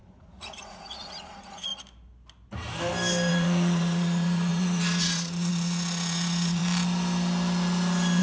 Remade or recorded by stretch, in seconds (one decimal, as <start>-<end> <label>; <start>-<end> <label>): 0.0-1.7 remade; 1.7-3.3 recorded; 3.3-6.6 remade; 6.6-8.2 recorded